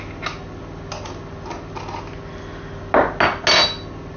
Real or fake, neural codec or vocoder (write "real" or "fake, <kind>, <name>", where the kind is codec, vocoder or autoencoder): real